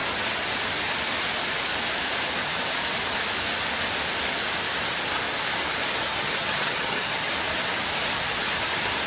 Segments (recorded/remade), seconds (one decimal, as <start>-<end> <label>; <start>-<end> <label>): 0.0-6.1 recorded; 6.1-7.3 remade; 7.3-9.1 recorded

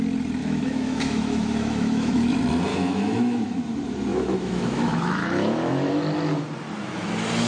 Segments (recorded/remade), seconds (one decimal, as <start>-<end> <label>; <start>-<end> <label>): 0.0-0.4 recorded; 0.4-2.3 remade; 2.3-2.7 recorded; 2.7-3.6 remade; 3.6-4.1 recorded; 4.1-5.9 remade; 5.9-7.5 recorded

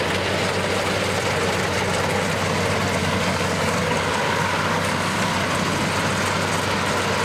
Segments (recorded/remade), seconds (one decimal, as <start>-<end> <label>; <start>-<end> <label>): 0.0-3.0 recorded; 3.0-5.3 remade; 5.3-7.2 recorded

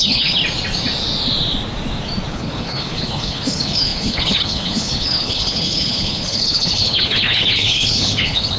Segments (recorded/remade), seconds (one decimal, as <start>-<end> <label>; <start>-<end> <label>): 0.0-0.4 remade; 0.4-2.3 recorded; 2.3-8.6 remade

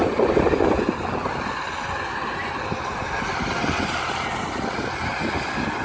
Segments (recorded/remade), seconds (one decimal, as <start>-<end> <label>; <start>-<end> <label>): 0.0-5.8 recorded

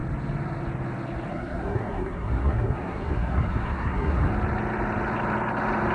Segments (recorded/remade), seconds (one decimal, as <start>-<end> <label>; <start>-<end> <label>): 0.0-1.3 recorded; 1.3-4.3 remade; 4.3-5.9 recorded